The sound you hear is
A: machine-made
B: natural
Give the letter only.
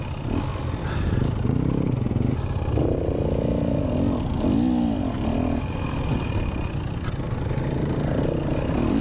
B